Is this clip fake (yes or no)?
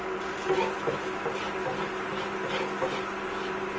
no